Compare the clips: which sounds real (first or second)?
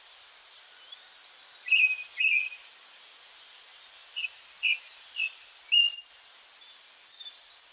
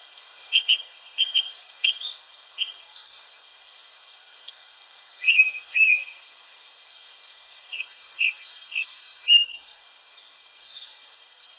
first